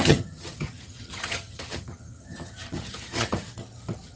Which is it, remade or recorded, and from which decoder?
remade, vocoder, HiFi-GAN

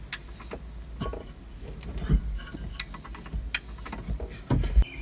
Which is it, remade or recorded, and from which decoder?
recorded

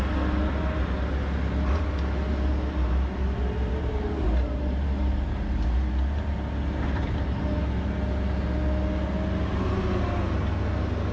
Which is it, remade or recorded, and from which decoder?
recorded